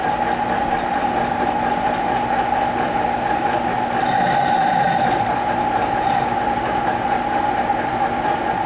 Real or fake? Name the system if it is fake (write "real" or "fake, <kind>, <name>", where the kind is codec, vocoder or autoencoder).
real